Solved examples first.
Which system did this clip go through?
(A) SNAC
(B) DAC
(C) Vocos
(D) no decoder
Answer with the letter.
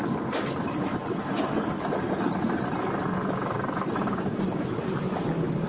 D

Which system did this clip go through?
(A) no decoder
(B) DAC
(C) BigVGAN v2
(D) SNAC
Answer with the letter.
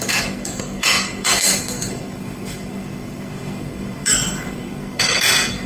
D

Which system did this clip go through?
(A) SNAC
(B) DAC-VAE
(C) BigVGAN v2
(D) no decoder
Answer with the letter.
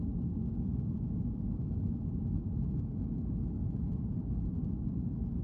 D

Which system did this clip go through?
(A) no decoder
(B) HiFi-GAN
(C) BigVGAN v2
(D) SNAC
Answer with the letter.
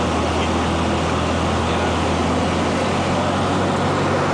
A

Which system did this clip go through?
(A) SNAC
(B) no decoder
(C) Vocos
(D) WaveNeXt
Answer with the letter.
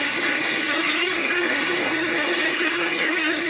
A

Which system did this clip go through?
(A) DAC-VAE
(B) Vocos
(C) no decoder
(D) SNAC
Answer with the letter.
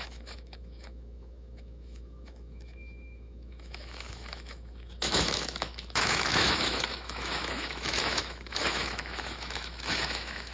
A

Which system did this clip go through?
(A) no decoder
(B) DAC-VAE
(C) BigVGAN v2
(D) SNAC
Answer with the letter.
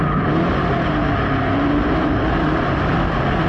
A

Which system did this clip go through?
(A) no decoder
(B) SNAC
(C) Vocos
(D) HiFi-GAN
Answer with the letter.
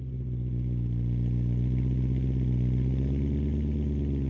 A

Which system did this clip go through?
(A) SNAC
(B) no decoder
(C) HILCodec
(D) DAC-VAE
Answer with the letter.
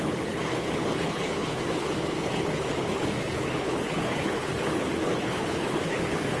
C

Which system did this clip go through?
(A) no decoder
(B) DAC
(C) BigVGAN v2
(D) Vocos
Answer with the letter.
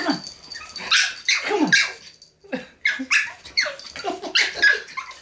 A